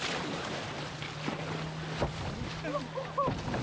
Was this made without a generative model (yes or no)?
yes